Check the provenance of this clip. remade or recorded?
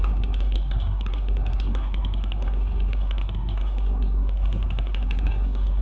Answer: remade